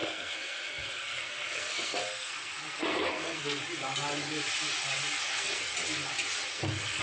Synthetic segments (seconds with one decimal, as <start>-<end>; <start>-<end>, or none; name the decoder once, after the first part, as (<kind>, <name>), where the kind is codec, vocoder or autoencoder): 0.0-3.6 (codec, SNAC); 5.2-5.7; 6.5-7.0